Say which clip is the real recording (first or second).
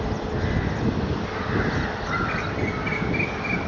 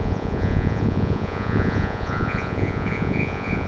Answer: first